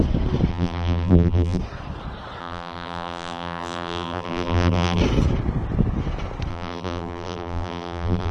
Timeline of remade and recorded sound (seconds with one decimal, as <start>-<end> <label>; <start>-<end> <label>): 0.0-0.5 recorded; 0.5-1.6 remade; 1.6-2.4 recorded; 2.4-5.0 remade; 5.0-6.5 recorded; 6.5-8.3 remade